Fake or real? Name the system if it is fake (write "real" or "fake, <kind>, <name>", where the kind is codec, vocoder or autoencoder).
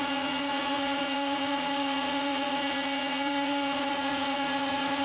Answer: fake, vocoder, Vocos